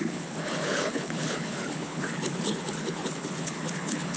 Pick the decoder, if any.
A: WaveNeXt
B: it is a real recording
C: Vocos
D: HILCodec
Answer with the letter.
D